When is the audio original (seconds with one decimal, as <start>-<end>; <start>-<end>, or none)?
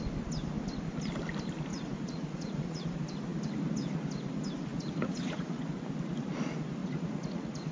0.0-1.7; 2.9-4.7; 5.6-6.8